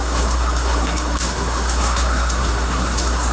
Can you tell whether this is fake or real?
fake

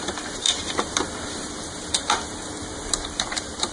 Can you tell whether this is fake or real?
fake